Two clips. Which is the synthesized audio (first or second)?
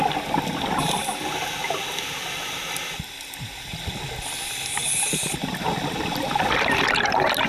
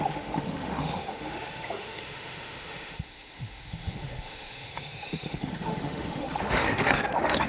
second